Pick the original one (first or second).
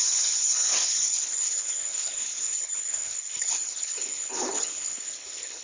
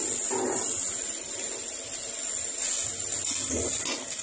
second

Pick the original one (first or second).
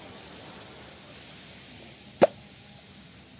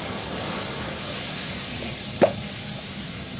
first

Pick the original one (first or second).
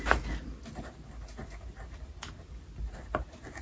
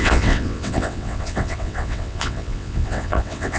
first